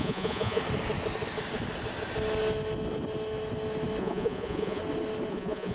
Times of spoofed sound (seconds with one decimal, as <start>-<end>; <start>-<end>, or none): 0.0-0.6; 4.0-4.8; 5.3-5.7